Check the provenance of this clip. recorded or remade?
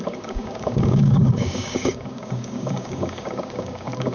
remade